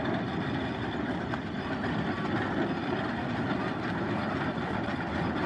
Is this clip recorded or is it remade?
recorded